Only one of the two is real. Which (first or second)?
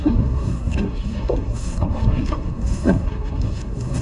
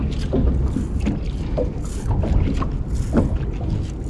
second